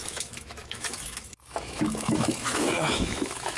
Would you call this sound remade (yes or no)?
yes